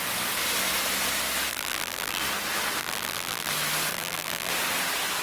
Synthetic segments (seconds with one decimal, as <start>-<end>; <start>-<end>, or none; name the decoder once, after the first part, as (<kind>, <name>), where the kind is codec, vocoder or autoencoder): 1.5-2.2 (vocoder, BigVGAN v2); 2.8-3.5; 3.9-4.5